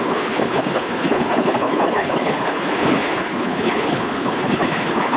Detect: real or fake fake